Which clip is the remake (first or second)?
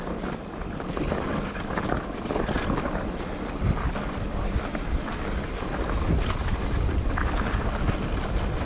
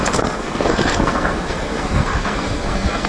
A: second